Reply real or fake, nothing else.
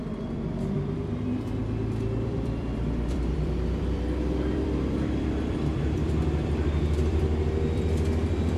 fake